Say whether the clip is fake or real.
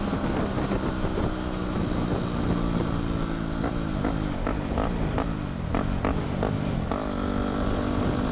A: real